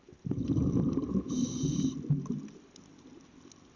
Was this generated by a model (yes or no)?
no